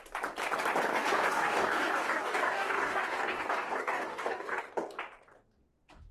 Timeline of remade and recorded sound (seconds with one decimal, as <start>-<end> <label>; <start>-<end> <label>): 0.0-0.9 recorded; 0.9-4.6 remade; 4.6-6.1 recorded